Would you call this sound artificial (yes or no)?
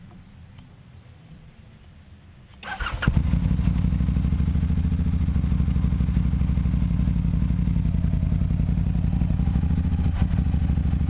no